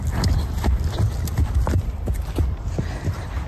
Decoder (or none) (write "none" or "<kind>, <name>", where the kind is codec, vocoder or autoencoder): none